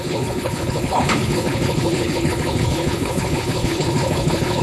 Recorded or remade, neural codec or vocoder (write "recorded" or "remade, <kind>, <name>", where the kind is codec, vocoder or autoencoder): remade, codec, HILCodec